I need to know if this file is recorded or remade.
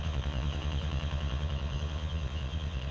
remade